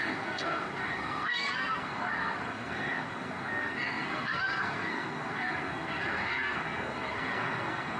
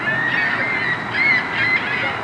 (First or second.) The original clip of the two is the second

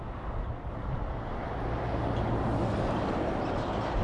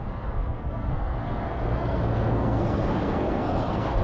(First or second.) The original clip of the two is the first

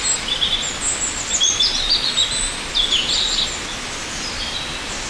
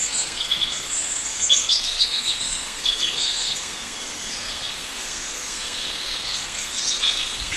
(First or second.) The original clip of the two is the first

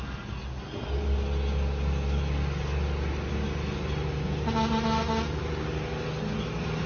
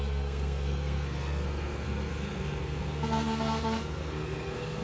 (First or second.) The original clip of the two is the first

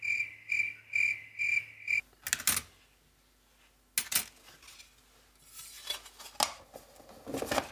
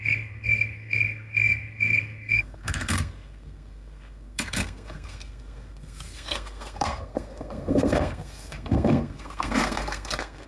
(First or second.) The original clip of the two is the first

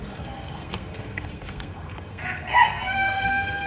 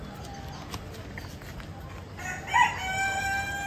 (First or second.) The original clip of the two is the second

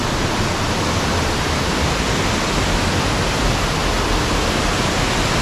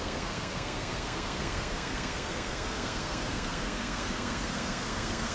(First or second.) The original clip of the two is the first